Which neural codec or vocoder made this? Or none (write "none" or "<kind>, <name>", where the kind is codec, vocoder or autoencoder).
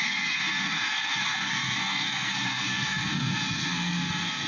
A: codec, SNAC